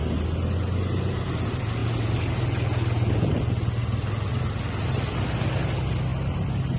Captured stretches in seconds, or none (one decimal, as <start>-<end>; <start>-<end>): 0.0-6.8